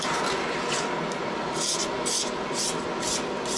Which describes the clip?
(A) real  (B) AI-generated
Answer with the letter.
A